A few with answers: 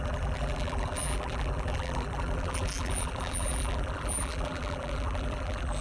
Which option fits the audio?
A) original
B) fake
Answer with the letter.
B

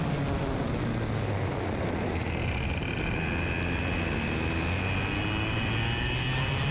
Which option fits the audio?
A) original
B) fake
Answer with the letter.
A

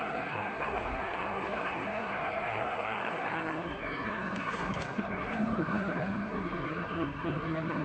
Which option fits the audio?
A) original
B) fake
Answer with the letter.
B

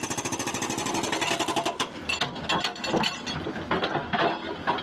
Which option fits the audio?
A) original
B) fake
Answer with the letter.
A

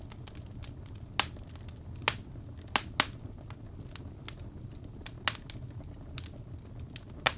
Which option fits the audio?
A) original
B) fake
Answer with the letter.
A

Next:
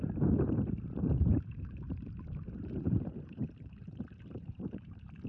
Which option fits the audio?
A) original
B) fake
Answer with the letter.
B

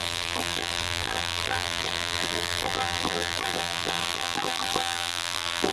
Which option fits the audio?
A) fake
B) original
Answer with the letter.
A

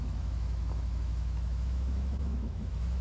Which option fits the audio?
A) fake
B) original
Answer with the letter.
A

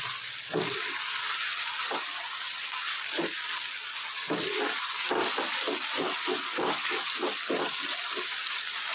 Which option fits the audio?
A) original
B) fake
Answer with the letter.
A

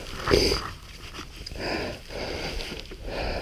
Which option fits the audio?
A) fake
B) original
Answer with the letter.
A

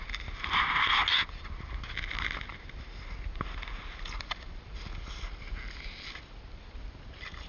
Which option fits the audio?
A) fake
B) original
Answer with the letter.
B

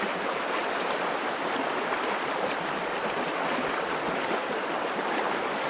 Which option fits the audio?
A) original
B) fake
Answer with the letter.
A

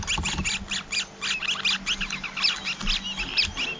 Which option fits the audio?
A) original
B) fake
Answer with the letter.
A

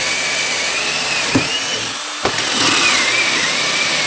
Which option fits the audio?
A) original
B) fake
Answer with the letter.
A